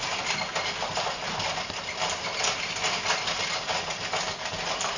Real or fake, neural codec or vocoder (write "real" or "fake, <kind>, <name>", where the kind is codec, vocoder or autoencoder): real